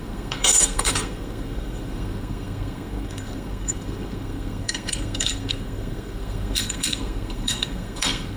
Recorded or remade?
remade